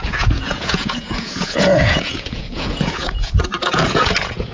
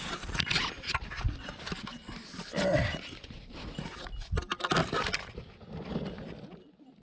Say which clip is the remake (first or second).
first